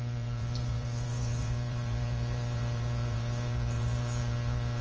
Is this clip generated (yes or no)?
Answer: yes